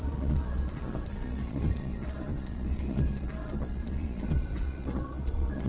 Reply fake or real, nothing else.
fake